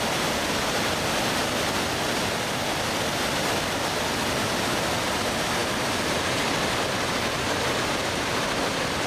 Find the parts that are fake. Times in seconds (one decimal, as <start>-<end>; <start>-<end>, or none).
none